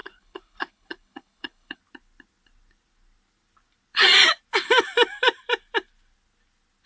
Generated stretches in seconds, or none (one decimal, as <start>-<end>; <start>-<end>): 0.0-1.8